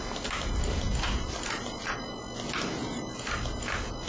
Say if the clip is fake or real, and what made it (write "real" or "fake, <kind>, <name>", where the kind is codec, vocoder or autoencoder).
real